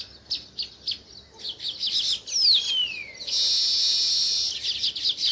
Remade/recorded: recorded